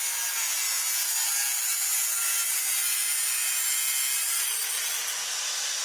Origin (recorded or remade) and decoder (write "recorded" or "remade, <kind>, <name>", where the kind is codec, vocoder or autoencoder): recorded